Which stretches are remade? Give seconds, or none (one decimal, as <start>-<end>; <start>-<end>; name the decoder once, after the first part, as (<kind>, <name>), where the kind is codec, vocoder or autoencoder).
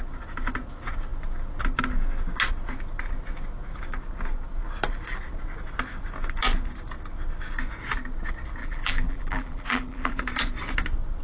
8.6-10.2 (vocoder, BigVGAN v2)